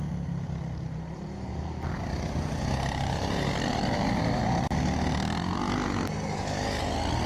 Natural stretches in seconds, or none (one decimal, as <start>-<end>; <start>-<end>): 0.0-7.3